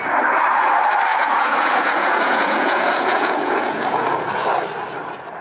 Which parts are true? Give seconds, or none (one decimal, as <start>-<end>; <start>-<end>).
0.0-1.1; 4.3-5.4